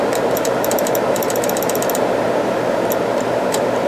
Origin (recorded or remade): remade